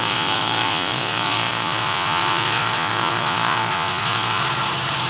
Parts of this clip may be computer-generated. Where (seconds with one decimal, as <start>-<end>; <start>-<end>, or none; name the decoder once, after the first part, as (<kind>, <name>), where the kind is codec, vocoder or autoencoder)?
0.0-4.4 (vocoder, Vocos)